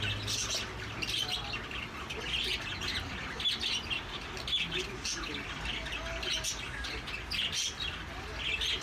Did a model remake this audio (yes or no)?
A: no